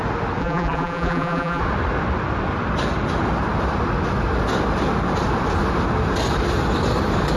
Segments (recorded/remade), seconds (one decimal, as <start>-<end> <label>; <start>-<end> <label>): 0.0-0.4 recorded; 0.4-1.6 remade; 1.6-7.4 recorded